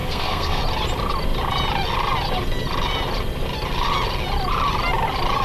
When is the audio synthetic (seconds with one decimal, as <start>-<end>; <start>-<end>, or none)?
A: 0.0-0.6